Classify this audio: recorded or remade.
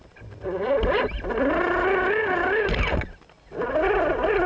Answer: recorded